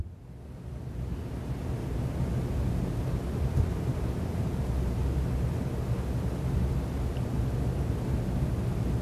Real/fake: real